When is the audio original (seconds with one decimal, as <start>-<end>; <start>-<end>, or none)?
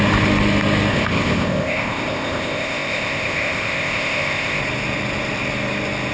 0.0-0.9; 4.6-6.1